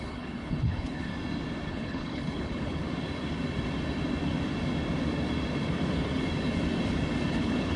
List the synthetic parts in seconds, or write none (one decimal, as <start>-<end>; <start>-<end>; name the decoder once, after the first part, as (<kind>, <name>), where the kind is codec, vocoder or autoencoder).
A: 0.0-1.1 (codec, HILCodec); 1.7-2.8; 7.3-7.8